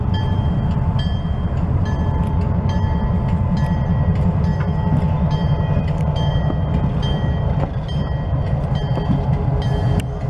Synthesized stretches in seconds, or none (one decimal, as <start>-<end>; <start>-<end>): none